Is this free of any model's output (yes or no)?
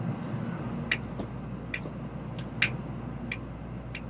yes